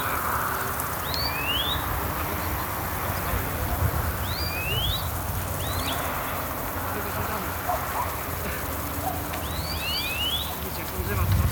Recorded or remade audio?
recorded